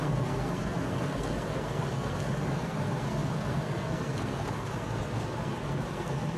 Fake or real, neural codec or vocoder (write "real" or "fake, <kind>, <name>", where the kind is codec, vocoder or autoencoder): fake, codec, SNAC